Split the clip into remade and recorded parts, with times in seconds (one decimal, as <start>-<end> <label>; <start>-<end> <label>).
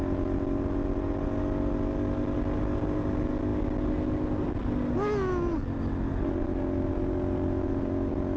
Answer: 0.0-8.4 recorded